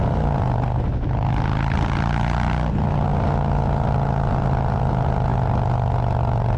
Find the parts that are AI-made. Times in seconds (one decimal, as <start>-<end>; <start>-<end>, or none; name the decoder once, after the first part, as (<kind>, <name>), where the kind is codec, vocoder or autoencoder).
none